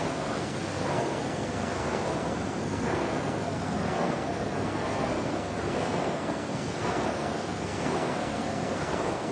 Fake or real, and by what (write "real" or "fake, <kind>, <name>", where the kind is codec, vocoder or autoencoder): fake, codec, SNAC